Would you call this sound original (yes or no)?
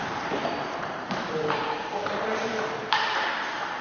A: no